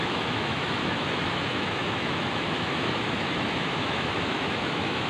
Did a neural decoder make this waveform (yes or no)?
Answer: yes